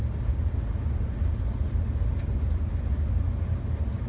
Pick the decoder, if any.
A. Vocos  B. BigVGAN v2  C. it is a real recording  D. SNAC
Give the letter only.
C